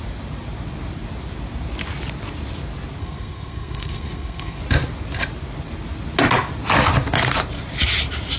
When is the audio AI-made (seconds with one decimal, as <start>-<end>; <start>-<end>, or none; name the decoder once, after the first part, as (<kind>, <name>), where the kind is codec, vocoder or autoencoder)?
3.0-4.6 (codec, SNAC)